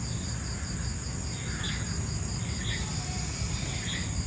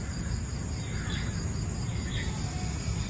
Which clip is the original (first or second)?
first